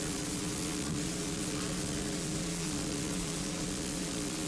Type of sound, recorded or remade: remade